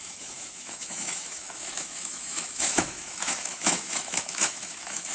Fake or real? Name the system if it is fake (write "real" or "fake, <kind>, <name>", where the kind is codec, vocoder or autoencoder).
fake, autoencoder, DAC-VAE